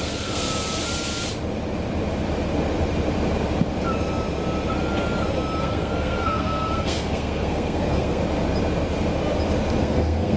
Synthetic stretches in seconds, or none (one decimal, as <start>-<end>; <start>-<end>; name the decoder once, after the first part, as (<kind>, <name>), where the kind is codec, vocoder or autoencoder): 0.0-0.5 (codec, SNAC); 5.6-8.2; 9.8-10.4